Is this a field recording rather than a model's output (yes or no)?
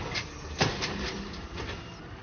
yes